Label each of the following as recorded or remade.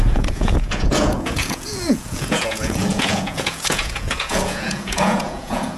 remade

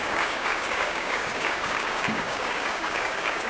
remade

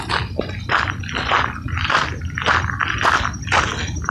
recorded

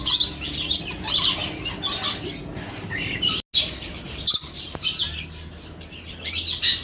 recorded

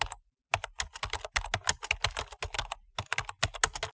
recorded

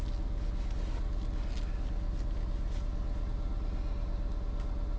recorded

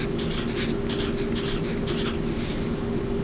recorded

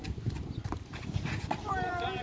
remade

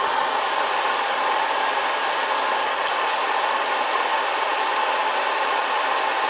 recorded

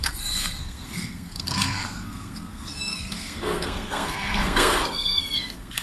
remade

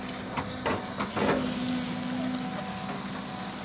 recorded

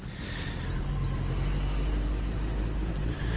recorded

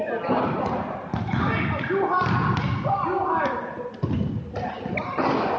recorded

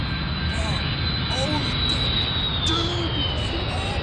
recorded